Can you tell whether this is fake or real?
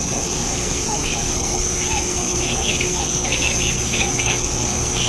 fake